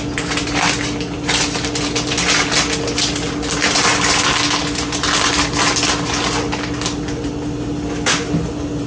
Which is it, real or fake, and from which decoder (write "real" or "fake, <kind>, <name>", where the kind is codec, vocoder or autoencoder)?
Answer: real